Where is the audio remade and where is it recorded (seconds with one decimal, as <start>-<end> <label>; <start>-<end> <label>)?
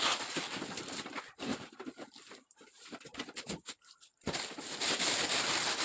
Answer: 0.0-1.5 recorded; 1.5-5.0 remade; 5.0-5.8 recorded